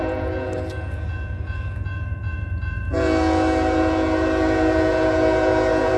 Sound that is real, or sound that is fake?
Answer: fake